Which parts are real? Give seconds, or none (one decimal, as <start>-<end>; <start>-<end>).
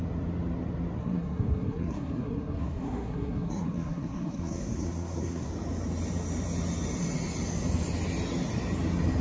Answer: 0.0-1.0; 5.5-9.2